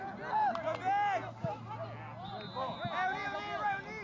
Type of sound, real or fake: real